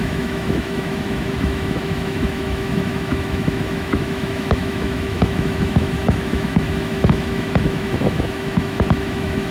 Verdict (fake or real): fake